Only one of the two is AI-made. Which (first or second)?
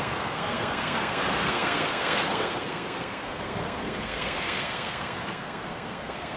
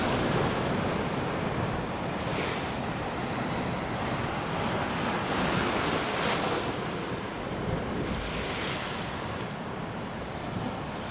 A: first